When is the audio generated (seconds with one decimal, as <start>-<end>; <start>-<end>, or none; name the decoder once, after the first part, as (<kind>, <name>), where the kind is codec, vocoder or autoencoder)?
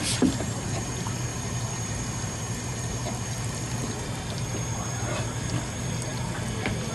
none